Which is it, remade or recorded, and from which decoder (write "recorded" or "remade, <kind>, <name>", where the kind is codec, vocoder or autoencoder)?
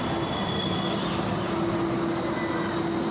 recorded